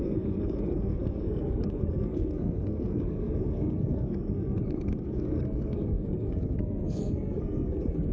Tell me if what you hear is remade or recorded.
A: remade